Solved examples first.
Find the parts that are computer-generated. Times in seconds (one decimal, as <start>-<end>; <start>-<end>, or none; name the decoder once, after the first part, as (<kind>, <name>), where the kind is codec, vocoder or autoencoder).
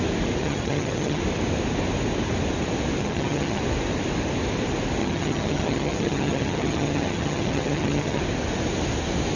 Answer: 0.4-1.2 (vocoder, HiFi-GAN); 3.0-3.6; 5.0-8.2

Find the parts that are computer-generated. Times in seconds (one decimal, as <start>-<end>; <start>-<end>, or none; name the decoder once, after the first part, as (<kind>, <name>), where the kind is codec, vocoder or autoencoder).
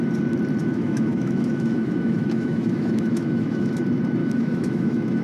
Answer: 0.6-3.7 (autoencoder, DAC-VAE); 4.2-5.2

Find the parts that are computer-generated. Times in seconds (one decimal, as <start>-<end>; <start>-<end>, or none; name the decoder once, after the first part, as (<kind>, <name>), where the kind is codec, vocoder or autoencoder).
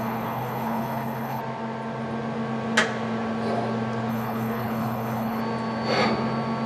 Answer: 0.0-1.4 (codec, HILCodec); 4.1-5.4